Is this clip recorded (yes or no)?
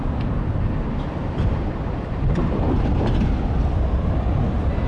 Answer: no